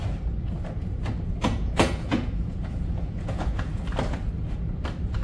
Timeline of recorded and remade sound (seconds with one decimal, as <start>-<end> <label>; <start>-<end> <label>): 0.0-1.4 recorded; 1.4-3.8 remade; 3.8-5.2 recorded